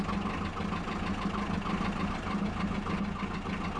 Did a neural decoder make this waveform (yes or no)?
no